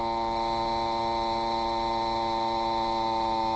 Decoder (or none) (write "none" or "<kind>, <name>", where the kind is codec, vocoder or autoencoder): none